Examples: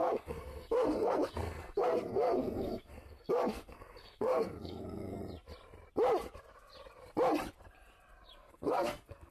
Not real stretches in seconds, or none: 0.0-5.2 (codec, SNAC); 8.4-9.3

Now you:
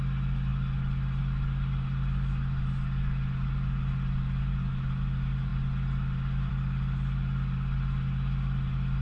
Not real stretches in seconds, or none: none